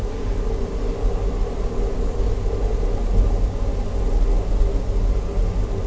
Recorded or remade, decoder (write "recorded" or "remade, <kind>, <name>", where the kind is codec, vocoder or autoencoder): recorded